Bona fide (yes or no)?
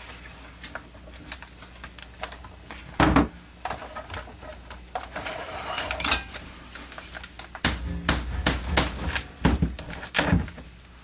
yes